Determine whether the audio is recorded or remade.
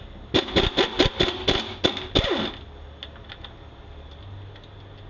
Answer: recorded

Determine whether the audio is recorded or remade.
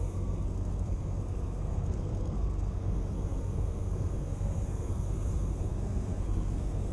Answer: remade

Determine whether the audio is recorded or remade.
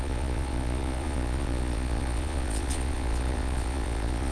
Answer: remade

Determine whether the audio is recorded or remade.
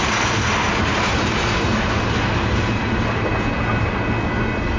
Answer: recorded